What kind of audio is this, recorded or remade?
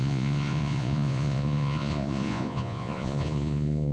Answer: remade